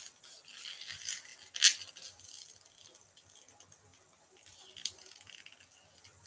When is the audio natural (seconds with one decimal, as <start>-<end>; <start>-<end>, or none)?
0.0-6.3